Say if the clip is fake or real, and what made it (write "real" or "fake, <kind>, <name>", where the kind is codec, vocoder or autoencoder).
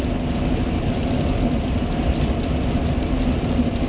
real